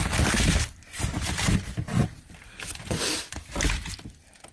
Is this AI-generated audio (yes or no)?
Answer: no